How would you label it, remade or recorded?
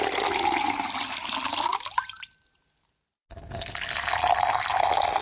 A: recorded